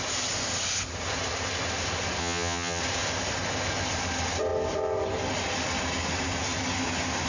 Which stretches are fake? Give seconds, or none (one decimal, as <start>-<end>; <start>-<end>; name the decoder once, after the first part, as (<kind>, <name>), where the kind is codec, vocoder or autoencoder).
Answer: 2.2-2.8 (vocoder, HiFi-GAN)